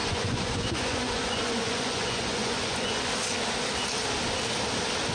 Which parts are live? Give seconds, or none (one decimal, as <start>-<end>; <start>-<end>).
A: 3.1-5.1